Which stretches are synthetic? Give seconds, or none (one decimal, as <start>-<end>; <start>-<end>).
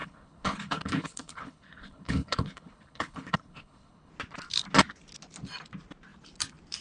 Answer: 0.0-4.1